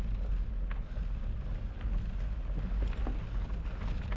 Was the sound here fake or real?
real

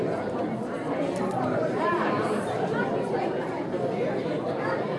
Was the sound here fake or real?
fake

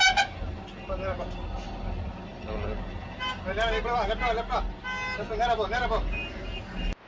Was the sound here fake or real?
real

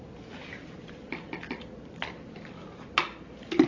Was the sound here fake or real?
real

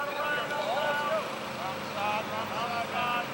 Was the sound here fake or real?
real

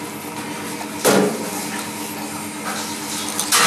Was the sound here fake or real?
real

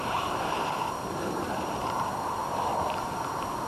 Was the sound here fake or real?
fake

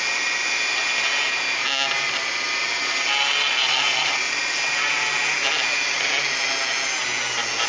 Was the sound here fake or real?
real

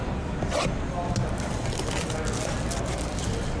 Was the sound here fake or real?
real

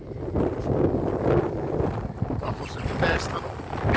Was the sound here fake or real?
real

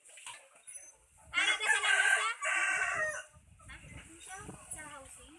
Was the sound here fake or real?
real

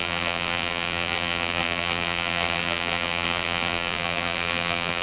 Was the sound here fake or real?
fake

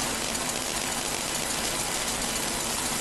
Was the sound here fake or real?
real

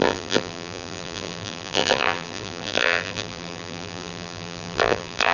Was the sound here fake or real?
fake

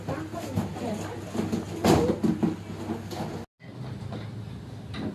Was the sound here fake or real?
real